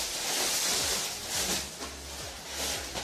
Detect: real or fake real